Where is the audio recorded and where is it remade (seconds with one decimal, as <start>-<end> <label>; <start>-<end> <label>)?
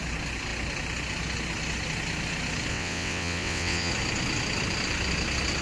0.0-2.7 recorded; 2.7-3.9 remade; 3.9-5.6 recorded